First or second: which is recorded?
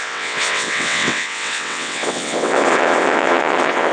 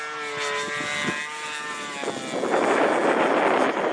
second